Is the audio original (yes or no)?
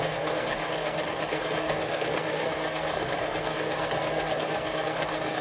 no